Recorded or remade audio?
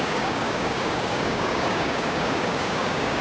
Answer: remade